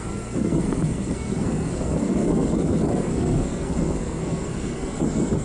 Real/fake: fake